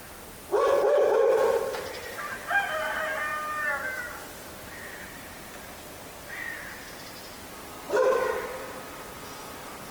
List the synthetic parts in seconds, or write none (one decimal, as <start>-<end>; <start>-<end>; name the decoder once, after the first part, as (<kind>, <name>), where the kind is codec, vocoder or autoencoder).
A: none